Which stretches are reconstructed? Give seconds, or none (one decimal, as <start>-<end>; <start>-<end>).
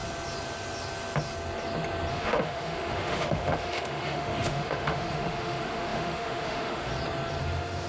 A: 2.1-6.9; 7.4-7.9